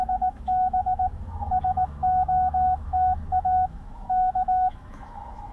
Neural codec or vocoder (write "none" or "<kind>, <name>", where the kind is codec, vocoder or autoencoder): autoencoder, DAC-VAE